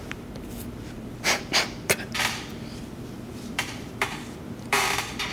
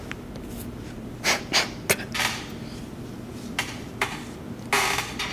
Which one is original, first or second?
second